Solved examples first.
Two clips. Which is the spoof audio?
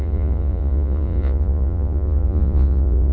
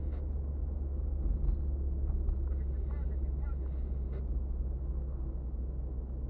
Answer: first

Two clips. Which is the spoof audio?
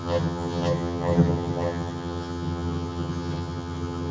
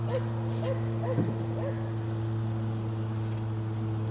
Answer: first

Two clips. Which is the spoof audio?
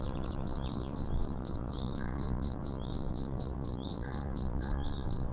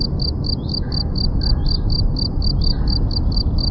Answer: first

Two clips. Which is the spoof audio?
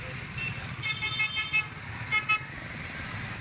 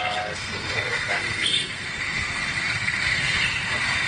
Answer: second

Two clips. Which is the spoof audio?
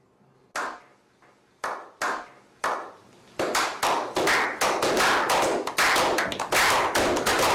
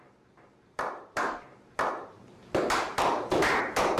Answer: second